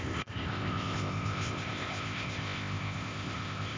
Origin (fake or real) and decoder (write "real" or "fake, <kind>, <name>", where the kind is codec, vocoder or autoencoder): fake, codec, ZipCodec